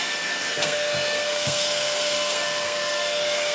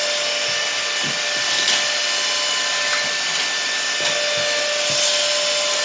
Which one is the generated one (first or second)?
first